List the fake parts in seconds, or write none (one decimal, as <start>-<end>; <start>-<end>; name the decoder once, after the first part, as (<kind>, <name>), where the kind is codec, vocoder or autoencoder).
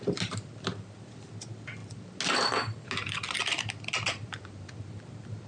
none